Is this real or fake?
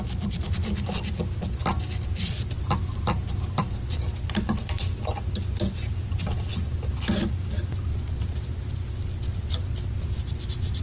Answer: real